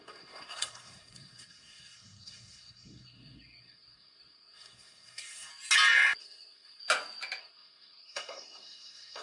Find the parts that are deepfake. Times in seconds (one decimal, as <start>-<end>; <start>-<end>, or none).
0.0-5.5; 6.2-6.8; 7.4-9.2